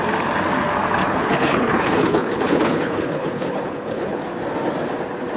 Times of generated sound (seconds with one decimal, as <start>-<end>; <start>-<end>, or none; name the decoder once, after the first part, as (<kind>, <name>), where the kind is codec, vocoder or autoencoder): 1.0-4.2 (codec, HILCodec)